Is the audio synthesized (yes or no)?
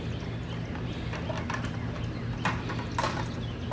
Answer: no